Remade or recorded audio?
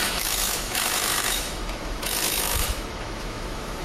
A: remade